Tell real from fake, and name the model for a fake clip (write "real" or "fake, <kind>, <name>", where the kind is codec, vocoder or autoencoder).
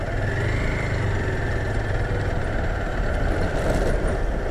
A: real